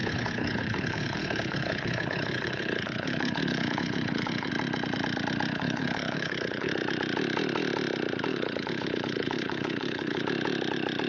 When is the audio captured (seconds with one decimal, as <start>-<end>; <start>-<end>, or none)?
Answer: 4.5-5.5; 6.7-8.3; 10.2-11.1